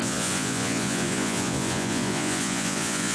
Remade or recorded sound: remade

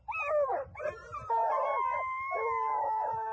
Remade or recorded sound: recorded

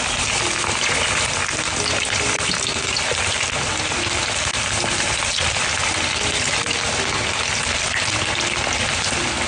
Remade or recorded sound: recorded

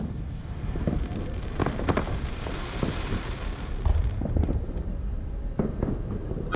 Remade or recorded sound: remade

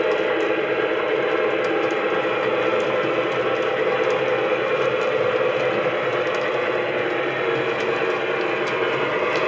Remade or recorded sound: recorded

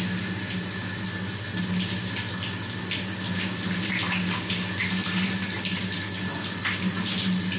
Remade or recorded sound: recorded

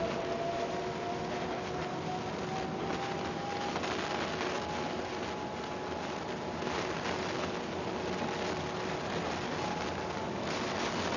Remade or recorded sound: recorded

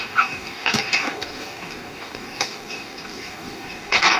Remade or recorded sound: remade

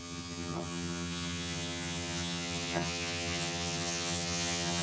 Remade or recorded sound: remade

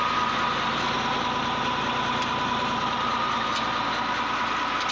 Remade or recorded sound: recorded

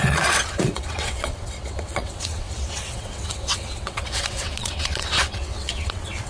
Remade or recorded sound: remade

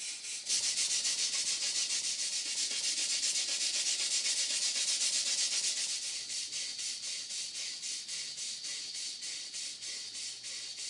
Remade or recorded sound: recorded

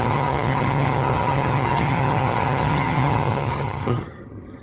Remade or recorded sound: remade